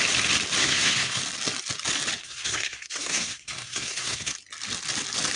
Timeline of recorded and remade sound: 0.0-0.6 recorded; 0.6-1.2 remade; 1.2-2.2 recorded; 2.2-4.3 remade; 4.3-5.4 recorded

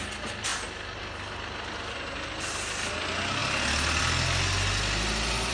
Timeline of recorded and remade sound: 0.0-5.5 recorded

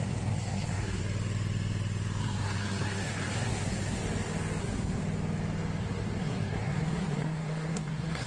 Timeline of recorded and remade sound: 0.0-1.0 remade; 1.0-2.2 recorded; 2.2-4.0 remade; 4.0-4.6 recorded; 4.6-5.0 remade; 5.0-5.8 recorded; 5.8-8.3 remade

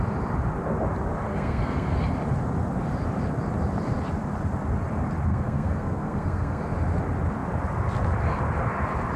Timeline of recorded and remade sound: 0.0-1.3 recorded; 1.3-2.0 remade; 2.0-5.3 recorded; 5.3-6.6 remade; 6.6-9.2 recorded

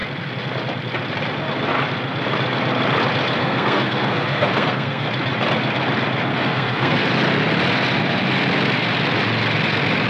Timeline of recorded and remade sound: 0.0-3.4 recorded; 3.4-5.1 remade; 5.1-6.3 recorded; 6.3-7.1 remade; 7.1-10.1 recorded

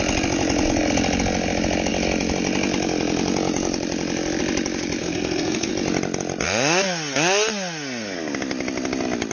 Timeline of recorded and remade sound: 0.0-5.0 recorded; 5.0-5.7 remade; 5.7-9.3 recorded

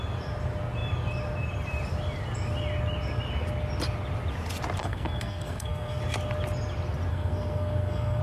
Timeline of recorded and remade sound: 0.0-4.8 recorded; 4.8-6.0 remade; 6.0-7.1 recorded; 7.1-8.2 remade

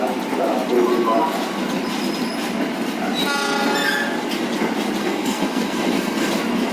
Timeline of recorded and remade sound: 0.0-5.0 recorded; 5.0-6.3 remade; 6.3-6.7 recorded